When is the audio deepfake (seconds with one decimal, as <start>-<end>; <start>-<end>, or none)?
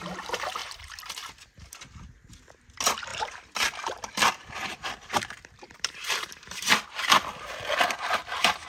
0.6-1.1; 3.1-6.7